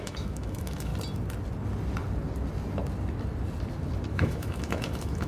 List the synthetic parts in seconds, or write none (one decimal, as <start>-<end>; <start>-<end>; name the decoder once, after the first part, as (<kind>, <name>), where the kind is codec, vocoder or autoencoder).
0.0-0.9 (autoencoder, DAC-VAE); 4.1-5.3